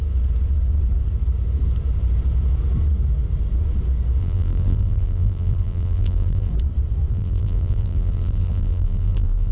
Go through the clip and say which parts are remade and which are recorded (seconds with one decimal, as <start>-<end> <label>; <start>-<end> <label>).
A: 0.0-4.2 recorded; 4.2-6.5 remade; 6.5-7.1 recorded; 7.1-9.5 remade